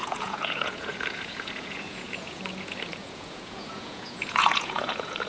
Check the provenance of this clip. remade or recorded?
remade